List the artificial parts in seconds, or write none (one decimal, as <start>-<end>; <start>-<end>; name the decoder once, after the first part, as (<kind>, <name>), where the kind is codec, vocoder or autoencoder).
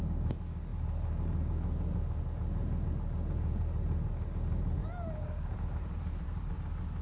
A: 4.8-6.6 (vocoder, BigVGAN v2)